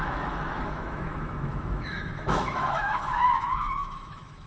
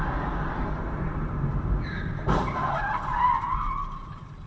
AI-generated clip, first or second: first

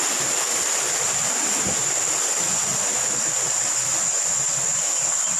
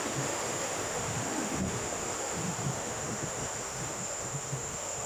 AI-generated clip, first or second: second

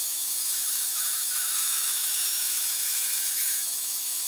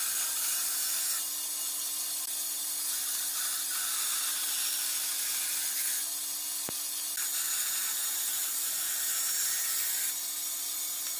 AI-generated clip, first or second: first